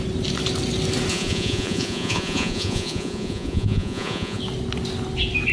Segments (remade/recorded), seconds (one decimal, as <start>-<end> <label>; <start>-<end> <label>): 0.0-1.1 recorded; 1.1-4.4 remade; 4.4-5.5 recorded